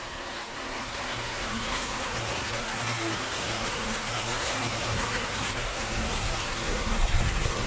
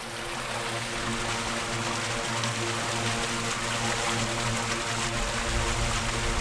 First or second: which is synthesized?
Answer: first